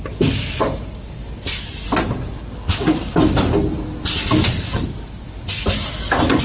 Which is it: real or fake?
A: real